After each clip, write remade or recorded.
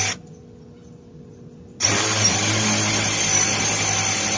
recorded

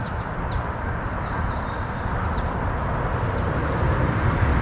recorded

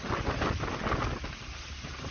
recorded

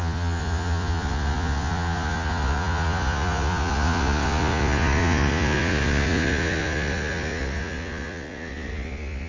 remade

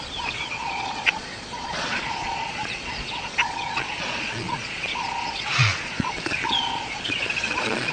remade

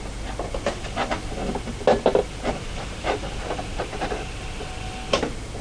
recorded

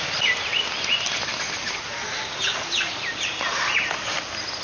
recorded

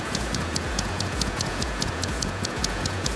remade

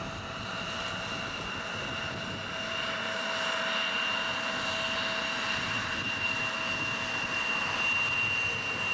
recorded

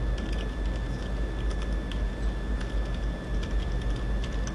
recorded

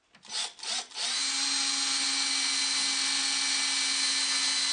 recorded